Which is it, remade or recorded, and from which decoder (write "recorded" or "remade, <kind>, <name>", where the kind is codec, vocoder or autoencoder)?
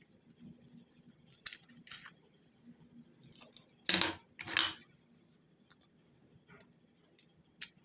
recorded